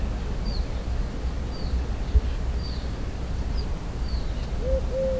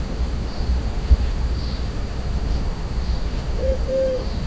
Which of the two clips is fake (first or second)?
second